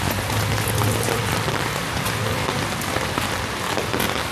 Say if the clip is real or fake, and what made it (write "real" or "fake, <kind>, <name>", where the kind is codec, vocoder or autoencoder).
real